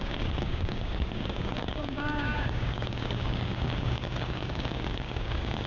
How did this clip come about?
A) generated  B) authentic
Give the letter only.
A